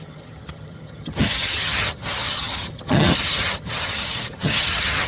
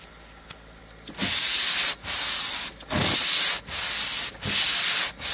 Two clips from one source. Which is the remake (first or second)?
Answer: first